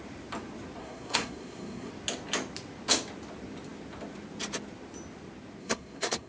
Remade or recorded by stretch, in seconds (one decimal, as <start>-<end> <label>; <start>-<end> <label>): 0.0-0.8 recorded; 0.8-1.9 remade; 1.9-5.6 recorded; 5.6-6.3 remade